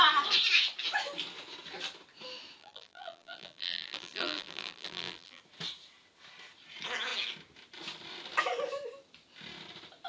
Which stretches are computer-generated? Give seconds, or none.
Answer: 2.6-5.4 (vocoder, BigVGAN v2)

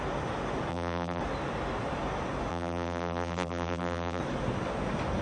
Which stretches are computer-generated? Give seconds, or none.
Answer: 0.7-1.2 (vocoder, BigVGAN v2); 2.5-4.2

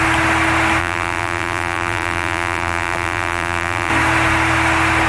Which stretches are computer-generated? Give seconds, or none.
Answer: 0.8-3.9 (vocoder, BigVGAN v2)

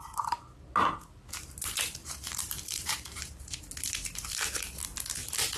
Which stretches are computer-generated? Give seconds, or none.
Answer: 2.0-3.4 (vocoder, BigVGAN v2)

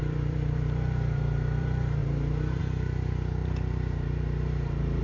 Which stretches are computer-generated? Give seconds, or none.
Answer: 0.0-5.0 (vocoder, BigVGAN v2)

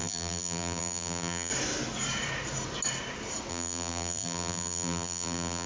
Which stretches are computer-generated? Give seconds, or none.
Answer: 0.0-1.5 (vocoder, BigVGAN v2); 3.5-5.7

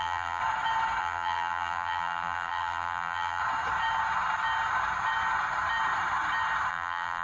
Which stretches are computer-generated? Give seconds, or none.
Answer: 0.0-0.4 (vocoder, BigVGAN v2); 1.0-3.4; 6.7-7.2

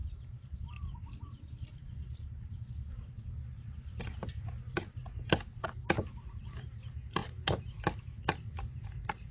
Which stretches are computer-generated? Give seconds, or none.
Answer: 0.0-2.7 (vocoder, BigVGAN v2)